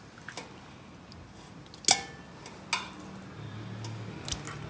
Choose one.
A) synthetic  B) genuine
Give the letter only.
B